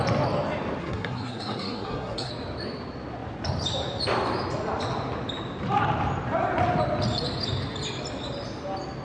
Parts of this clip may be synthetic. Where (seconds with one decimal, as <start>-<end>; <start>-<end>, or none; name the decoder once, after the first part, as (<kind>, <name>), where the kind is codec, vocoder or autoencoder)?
0.8-2.3 (codec, SNAC)